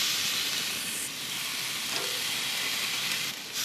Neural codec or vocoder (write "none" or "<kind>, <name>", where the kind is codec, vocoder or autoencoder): none